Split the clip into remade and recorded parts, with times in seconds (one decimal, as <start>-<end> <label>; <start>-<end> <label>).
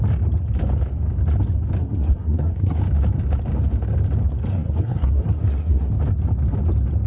0.0-1.8 recorded; 1.8-2.8 remade; 2.8-4.5 recorded; 4.5-5.9 remade; 5.9-7.1 recorded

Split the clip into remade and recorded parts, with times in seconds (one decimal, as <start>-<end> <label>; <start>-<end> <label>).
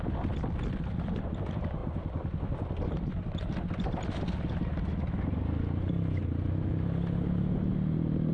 0.0-8.3 recorded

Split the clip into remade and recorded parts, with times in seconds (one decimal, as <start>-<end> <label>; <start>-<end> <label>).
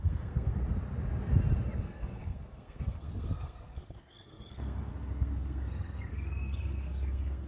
0.0-0.6 remade; 0.6-1.8 recorded; 1.8-7.5 remade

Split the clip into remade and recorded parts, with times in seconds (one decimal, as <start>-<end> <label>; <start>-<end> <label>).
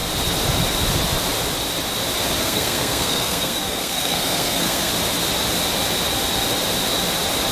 0.0-2.4 recorded; 2.4-4.9 remade; 4.9-7.5 recorded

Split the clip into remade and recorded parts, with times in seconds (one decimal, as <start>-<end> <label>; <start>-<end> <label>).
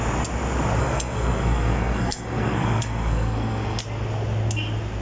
0.0-0.8 recorded; 0.8-3.8 remade; 3.8-5.0 recorded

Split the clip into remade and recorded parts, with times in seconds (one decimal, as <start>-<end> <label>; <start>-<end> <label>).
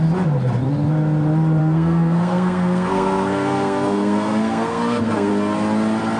0.0-1.6 recorded; 1.6-5.3 remade; 5.3-6.2 recorded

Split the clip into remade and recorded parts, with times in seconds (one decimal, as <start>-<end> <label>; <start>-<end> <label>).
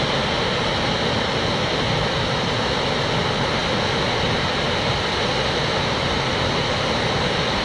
0.0-7.6 recorded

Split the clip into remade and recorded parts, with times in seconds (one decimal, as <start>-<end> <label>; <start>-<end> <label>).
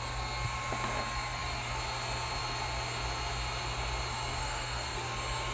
0.0-4.4 recorded; 4.4-5.0 remade; 5.0-5.5 recorded